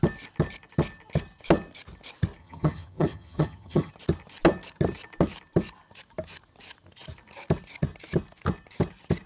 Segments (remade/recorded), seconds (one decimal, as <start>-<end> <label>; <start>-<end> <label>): 0.0-2.4 recorded; 2.4-3.9 remade; 3.9-9.3 recorded

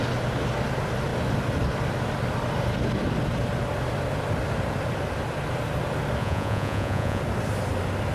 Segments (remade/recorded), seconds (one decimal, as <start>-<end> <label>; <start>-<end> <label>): 0.0-6.2 recorded; 6.2-7.2 remade; 7.2-8.1 recorded

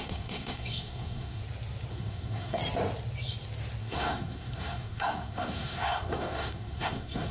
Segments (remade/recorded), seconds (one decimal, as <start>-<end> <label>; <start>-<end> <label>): 0.0-1.4 remade; 1.4-1.9 recorded; 1.9-2.6 remade; 2.6-3.8 recorded; 3.8-7.3 remade